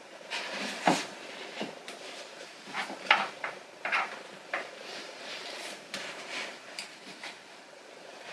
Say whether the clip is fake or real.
fake